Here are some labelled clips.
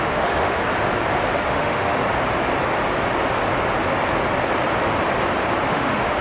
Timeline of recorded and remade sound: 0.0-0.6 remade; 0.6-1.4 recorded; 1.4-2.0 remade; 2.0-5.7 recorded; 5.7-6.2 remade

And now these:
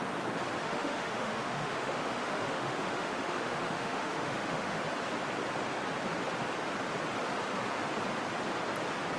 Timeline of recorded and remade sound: 0.0-0.6 recorded; 0.6-4.8 remade; 4.8-9.2 recorded